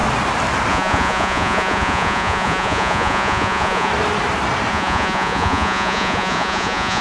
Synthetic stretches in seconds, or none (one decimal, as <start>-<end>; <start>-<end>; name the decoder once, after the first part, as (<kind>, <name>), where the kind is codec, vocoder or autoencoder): 0.7-3.9 (vocoder, Vocos); 4.7-7.0